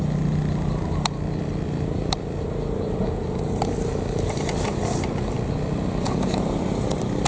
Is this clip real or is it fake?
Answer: fake